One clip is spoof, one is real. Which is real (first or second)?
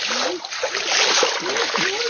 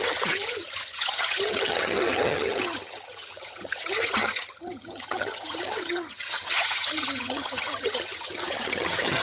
first